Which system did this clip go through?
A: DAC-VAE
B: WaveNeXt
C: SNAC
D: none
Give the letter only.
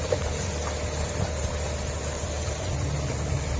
D